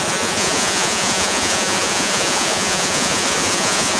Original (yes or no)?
no